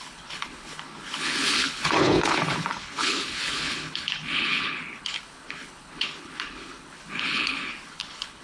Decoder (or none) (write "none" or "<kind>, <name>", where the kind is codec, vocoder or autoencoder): codec, HILCodec